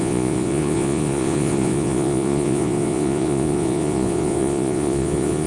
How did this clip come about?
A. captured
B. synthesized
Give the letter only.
B